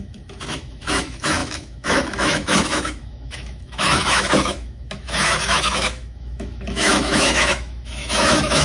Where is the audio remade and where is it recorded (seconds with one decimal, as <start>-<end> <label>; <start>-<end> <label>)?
0.0-8.6 remade